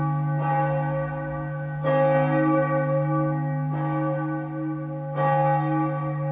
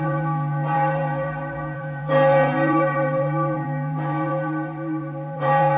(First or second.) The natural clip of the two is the first